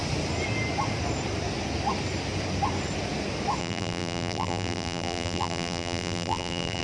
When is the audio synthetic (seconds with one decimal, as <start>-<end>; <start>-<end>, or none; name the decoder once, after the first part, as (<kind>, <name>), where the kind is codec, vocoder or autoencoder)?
3.6-6.8 (vocoder, BigVGAN v2)